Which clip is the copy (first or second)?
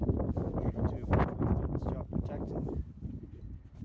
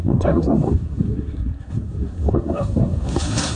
second